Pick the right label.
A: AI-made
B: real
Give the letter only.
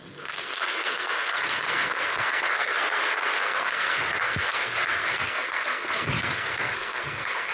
A